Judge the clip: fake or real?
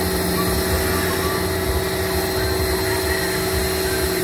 real